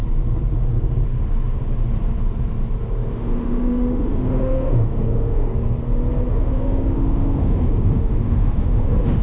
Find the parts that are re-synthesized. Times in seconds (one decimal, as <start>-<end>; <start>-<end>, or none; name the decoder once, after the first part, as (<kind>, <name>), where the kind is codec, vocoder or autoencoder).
3.1-5.5 (autoencoder, DAC-VAE); 6.3-9.2